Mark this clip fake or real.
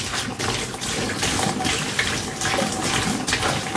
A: real